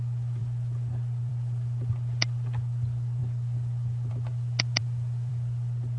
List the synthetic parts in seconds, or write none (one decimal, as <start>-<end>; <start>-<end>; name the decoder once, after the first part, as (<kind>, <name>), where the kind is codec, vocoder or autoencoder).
none